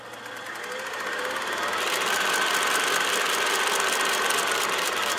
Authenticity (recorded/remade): recorded